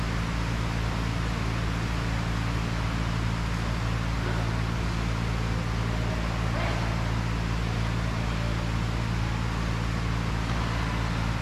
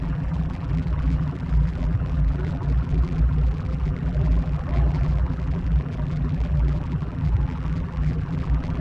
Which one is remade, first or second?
second